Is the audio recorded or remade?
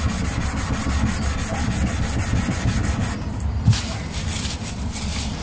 recorded